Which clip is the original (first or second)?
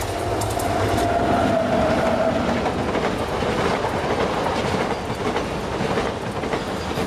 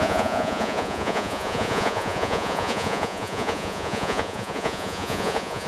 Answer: first